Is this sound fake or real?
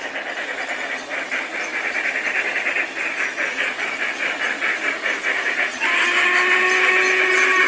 real